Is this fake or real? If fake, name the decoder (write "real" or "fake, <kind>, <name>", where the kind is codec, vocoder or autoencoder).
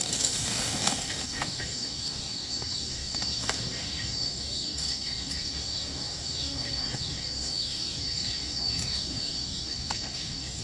fake, codec, DAC